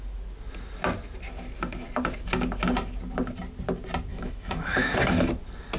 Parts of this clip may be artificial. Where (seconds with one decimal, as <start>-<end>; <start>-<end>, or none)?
4.1-5.3